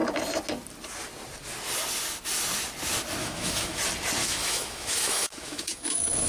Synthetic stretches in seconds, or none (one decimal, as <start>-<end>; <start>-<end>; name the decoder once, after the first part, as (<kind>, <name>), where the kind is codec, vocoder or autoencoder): 3.2-3.8 (autoencoder, DAC-VAE); 4.2-6.3